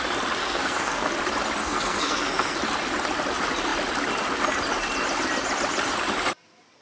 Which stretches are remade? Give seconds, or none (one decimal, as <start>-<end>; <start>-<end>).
0.4-1.1; 1.6-2.6